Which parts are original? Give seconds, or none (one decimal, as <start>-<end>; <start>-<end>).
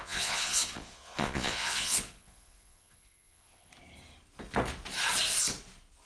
3.7-6.1